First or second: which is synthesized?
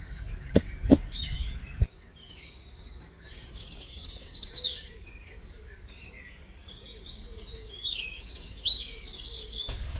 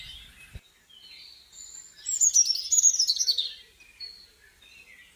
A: first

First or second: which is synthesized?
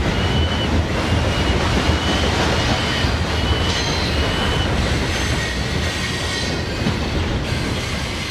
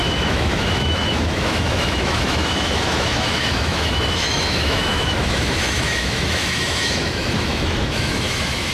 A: second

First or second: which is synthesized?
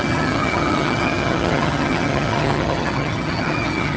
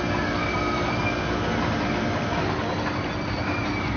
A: first